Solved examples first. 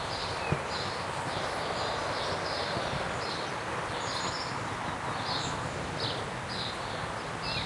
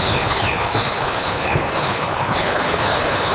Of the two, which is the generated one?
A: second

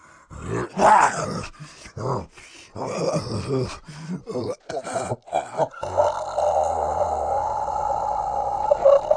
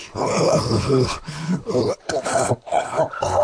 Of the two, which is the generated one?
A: second